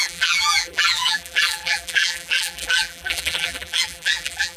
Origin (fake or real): fake